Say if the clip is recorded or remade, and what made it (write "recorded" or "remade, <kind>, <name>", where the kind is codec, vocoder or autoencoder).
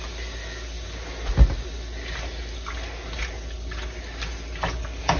recorded